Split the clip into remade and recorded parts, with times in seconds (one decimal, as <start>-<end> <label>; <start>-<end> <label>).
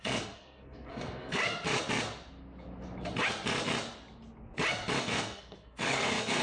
0.0-1.4 remade; 1.4-5.0 recorded; 5.0-6.4 remade